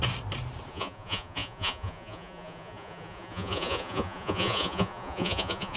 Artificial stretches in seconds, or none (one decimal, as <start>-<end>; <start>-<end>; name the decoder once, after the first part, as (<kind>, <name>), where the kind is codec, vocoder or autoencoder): 0.7-5.8 (vocoder, Vocos)